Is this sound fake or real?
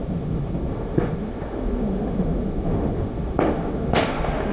fake